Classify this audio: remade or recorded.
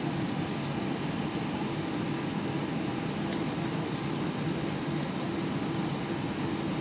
recorded